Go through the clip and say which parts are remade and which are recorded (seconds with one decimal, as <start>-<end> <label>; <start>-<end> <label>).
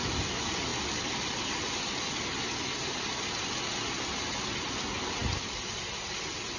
0.0-6.6 recorded